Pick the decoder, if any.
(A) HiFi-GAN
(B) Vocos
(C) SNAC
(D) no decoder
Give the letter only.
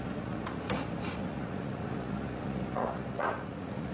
B